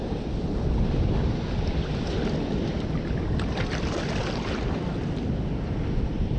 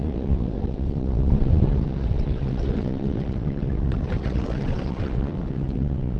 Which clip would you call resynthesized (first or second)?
second